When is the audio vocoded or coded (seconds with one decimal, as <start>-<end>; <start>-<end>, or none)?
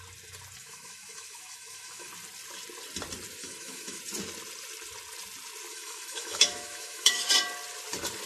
0.6-2.1; 3.4-4.0; 5.7-7.3